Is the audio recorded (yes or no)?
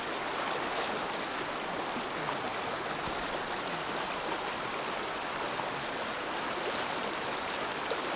yes